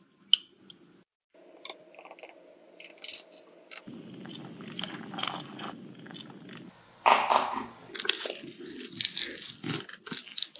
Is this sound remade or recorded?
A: recorded